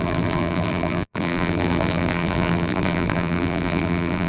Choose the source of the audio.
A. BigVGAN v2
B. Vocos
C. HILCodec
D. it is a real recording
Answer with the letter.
A